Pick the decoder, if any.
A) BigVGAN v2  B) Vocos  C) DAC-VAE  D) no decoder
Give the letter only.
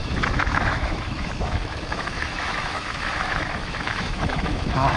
C